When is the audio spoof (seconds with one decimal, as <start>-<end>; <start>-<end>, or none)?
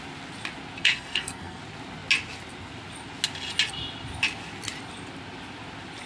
0.8-1.6